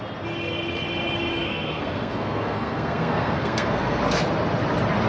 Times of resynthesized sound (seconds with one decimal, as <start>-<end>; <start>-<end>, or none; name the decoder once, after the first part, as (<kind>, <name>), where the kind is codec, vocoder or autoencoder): 1.3-4.0 (codec, SNAC)